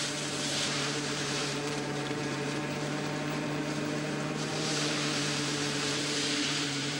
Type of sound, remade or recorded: remade